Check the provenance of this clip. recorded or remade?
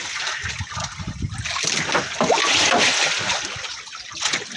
recorded